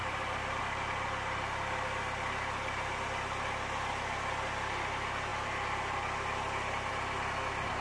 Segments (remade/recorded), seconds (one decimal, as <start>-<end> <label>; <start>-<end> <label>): 0.0-0.6 remade; 0.6-7.8 recorded